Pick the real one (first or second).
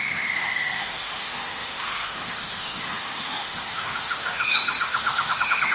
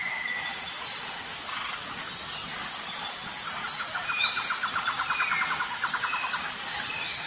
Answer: second